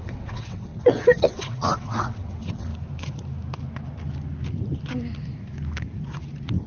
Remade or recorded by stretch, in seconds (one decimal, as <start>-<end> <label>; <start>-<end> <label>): 0.0-2.7 remade; 2.7-6.7 recorded